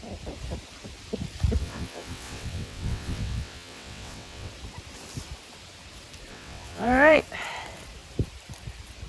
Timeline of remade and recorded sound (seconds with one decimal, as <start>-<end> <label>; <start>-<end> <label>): 0.0-1.6 recorded; 1.6-4.5 remade; 4.5-6.3 recorded; 6.3-7.2 remade; 7.2-9.1 recorded